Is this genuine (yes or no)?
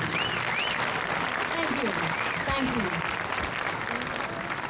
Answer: yes